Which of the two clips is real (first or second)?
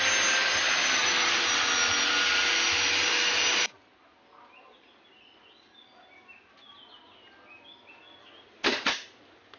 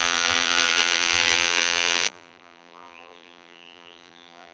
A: first